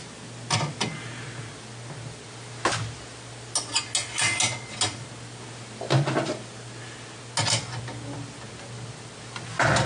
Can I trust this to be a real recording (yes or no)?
yes